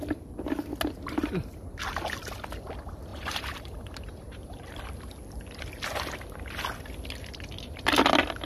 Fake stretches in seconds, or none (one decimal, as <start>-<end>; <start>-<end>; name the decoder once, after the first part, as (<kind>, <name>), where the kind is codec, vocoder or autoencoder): 3.1-4.8 (vocoder, BigVGAN v2)